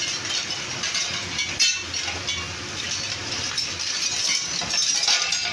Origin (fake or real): real